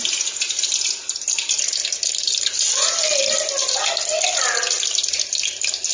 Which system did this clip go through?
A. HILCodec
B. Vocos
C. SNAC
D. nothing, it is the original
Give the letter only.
D